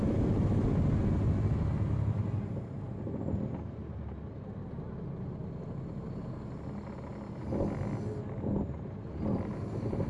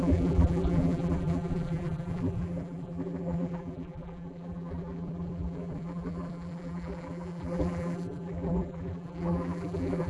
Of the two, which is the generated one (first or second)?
second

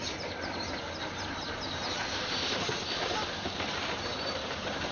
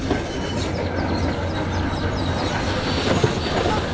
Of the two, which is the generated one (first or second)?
first